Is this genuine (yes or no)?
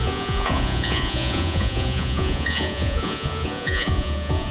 no